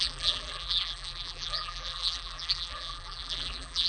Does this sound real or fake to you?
fake